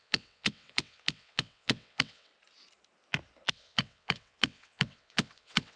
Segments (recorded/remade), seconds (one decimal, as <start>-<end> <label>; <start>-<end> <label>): 0.0-2.3 remade; 2.3-3.5 recorded; 3.5-5.8 remade